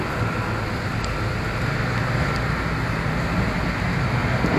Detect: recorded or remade recorded